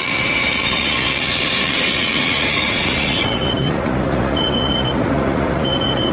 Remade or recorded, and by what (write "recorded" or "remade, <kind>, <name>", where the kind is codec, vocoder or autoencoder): remade, vocoder, Vocos